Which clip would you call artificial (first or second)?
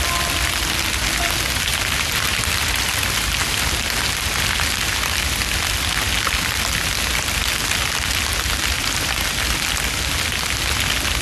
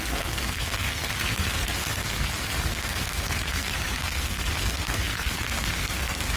second